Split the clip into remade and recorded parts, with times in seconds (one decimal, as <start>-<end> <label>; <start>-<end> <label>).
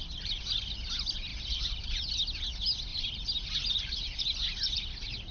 0.0-0.5 remade; 0.5-1.3 recorded; 1.3-2.1 remade; 2.1-2.9 recorded; 2.9-4.2 remade; 4.2-5.3 recorded